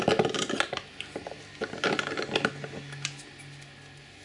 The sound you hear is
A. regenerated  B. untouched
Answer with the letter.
B